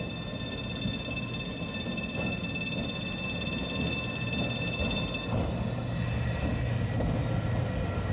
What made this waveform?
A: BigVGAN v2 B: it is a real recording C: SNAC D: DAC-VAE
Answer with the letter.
B